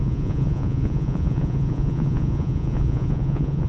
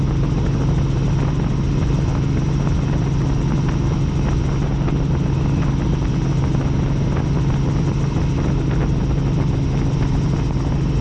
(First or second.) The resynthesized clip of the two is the first